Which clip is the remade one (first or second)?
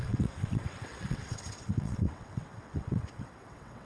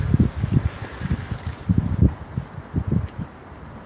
first